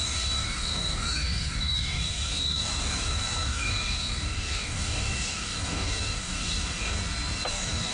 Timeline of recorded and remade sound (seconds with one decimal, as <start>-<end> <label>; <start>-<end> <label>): 0.0-7.0 remade; 7.0-7.5 recorded; 7.5-7.9 remade